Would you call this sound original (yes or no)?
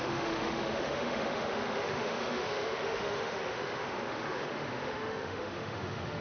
no